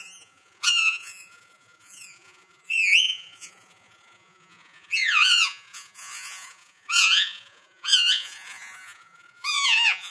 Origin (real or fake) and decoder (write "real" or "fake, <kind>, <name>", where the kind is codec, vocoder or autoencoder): fake, vocoder, Vocos